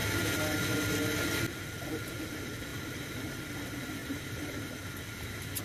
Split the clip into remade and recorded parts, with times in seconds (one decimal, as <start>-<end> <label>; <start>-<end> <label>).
0.0-2.7 recorded; 2.7-3.4 remade; 3.4-4.0 recorded; 4.0-4.7 remade; 4.7-5.6 recorded